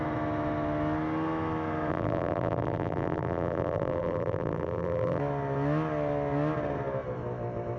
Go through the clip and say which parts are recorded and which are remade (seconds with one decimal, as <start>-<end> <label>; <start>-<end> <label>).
0.0-1.9 recorded; 1.9-5.2 remade; 5.2-7.8 recorded